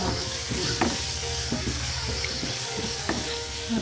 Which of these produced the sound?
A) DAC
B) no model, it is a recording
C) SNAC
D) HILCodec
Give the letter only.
A